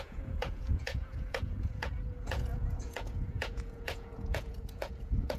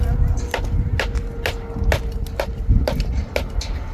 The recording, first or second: second